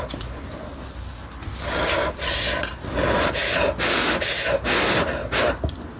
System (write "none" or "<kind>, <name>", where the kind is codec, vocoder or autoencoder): none